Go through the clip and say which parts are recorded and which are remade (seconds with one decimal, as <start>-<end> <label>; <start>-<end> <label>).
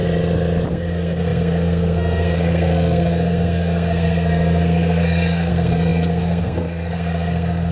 0.0-0.7 recorded; 0.7-7.7 remade